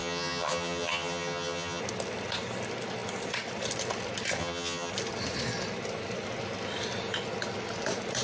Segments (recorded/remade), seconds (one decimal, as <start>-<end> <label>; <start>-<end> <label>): 0.0-1.8 remade; 1.8-4.4 recorded; 4.4-4.9 remade; 4.9-8.2 recorded